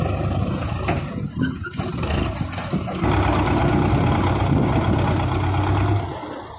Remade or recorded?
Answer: recorded